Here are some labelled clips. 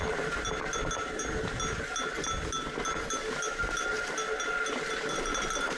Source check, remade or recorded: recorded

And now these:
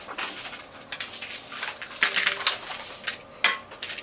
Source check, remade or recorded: recorded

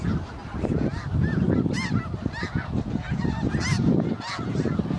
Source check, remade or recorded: recorded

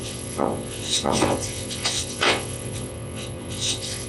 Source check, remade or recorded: remade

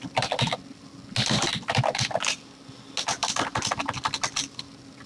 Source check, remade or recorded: recorded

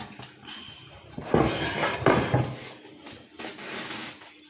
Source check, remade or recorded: recorded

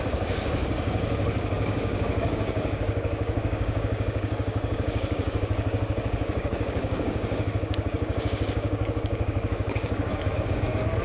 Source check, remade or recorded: remade